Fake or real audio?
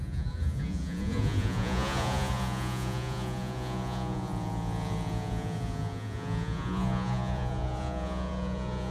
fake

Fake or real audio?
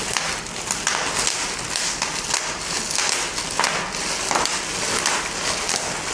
real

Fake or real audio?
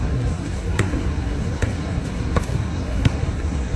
fake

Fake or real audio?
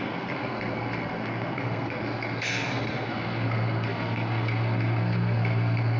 fake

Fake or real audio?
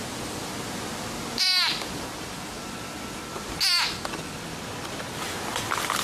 real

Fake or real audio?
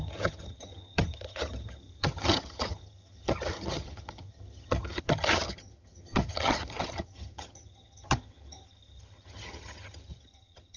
fake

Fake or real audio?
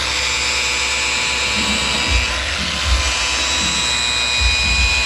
real